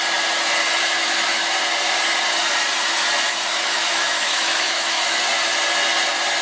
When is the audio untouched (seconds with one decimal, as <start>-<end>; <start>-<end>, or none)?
0.0-1.0; 1.5-3.5; 5.2-6.4